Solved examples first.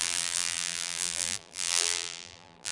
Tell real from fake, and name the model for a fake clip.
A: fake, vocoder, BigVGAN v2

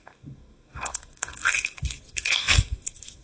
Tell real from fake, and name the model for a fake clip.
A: fake, codec, SNAC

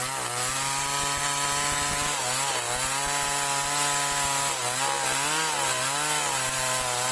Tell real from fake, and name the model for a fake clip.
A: real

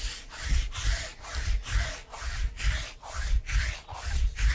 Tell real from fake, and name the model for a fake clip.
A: real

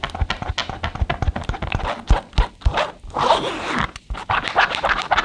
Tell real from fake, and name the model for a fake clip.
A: real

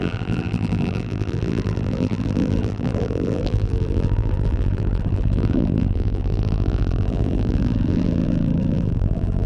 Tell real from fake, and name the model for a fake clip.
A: fake, vocoder, BigVGAN v2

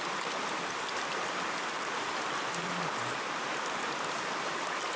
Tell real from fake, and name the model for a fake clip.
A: real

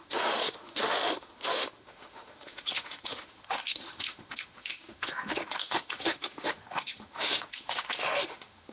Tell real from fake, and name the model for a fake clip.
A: fake, autoencoder, DAC-VAE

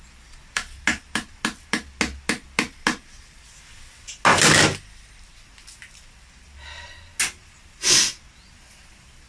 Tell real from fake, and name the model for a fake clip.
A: real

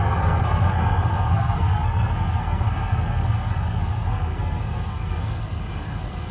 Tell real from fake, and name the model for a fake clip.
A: fake, codec, SNAC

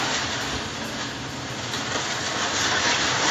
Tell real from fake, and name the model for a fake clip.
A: real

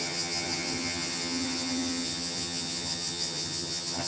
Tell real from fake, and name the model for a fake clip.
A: fake, vocoder, HiFi-GAN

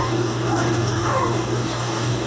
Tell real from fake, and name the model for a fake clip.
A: fake, codec, DAC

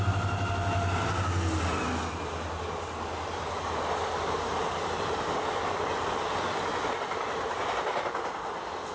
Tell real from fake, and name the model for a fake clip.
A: real